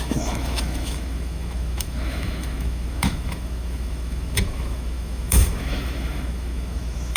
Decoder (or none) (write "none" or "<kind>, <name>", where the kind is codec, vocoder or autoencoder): autoencoder, DAC-VAE